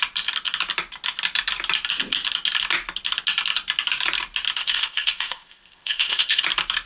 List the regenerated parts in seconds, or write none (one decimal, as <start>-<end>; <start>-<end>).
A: 4.6-6.4